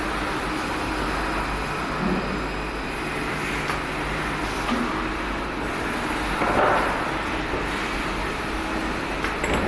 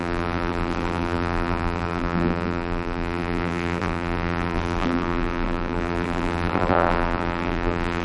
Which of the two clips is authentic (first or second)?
first